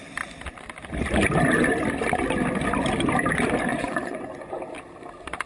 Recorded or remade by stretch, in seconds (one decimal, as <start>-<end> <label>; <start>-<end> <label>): 0.0-3.7 recorded; 3.7-4.6 remade; 4.6-5.5 recorded